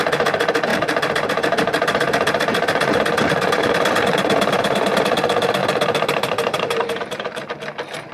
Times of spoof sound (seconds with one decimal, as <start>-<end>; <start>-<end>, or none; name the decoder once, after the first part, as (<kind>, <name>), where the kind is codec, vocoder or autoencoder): 0.7-5.0 (vocoder, BigVGAN v2); 5.6-7.5